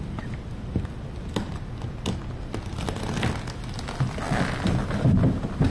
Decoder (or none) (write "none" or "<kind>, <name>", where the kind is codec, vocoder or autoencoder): none